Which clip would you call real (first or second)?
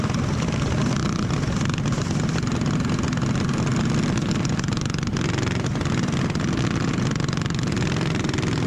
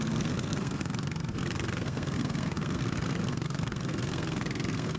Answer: first